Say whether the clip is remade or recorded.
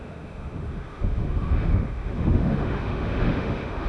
remade